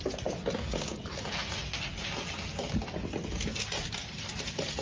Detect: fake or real real